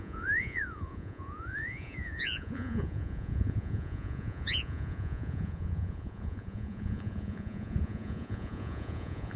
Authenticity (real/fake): fake